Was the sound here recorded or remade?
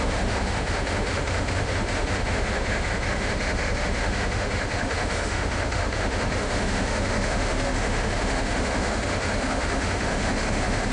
remade